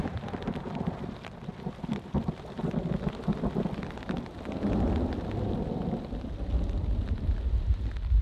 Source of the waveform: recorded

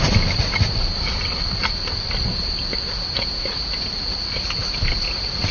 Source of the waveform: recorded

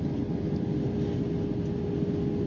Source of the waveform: recorded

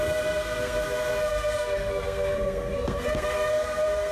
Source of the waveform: remade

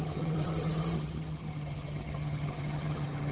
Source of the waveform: remade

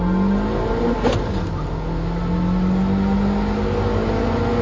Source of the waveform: recorded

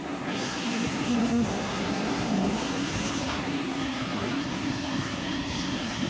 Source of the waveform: remade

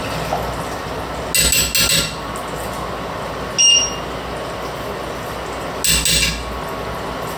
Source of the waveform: recorded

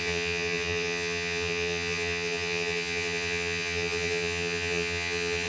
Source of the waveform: remade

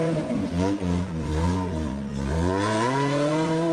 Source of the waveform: remade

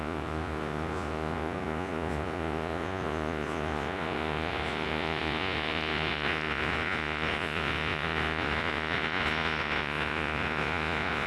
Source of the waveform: remade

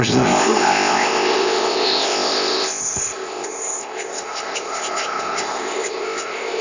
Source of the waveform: remade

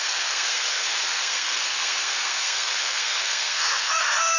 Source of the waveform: remade